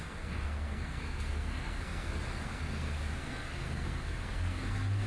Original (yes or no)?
no